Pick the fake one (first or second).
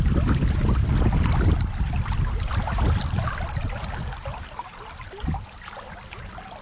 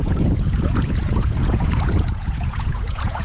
second